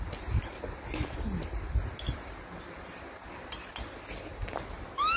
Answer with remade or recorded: recorded